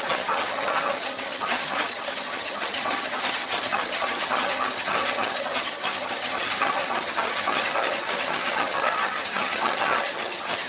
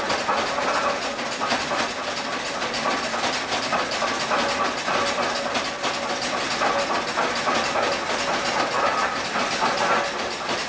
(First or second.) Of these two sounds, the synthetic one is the first